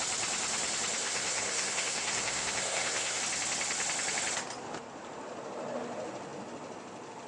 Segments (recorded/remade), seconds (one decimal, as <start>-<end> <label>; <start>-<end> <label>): 0.0-1.0 recorded; 1.0-3.2 remade; 3.2-7.3 recorded